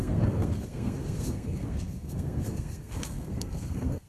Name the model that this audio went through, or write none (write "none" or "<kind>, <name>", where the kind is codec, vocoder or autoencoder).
codec, SNAC